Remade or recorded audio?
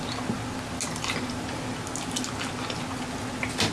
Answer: recorded